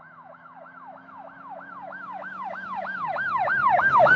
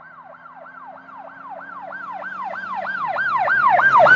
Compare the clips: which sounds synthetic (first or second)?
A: first